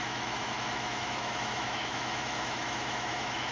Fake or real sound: fake